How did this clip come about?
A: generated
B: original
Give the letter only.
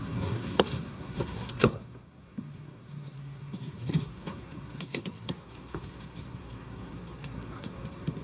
A